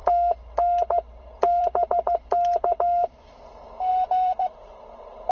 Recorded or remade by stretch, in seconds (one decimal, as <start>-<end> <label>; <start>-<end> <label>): 0.0-3.2 remade; 3.2-3.9 recorded; 3.9-5.3 remade

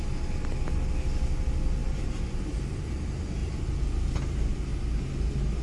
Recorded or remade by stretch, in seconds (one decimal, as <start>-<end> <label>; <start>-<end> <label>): 0.0-1.8 recorded; 1.8-3.0 remade; 3.0-3.4 recorded; 3.4-4.0 remade; 4.0-5.6 recorded

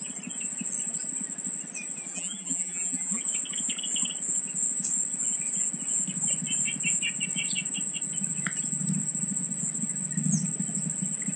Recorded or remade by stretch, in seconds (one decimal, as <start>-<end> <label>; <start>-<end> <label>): 0.0-2.1 recorded; 2.1-3.2 remade; 3.2-11.4 recorded

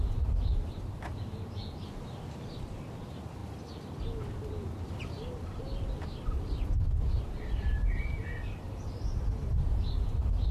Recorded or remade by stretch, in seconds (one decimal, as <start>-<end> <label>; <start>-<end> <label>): 0.0-10.5 recorded

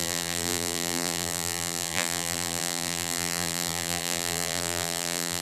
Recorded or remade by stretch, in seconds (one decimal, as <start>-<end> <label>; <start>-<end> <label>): 0.0-5.4 remade

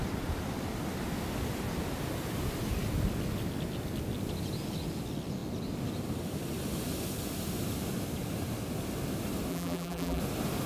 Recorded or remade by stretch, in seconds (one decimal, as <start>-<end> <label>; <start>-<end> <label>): 0.0-9.5 recorded; 9.5-10.2 remade; 10.2-10.7 recorded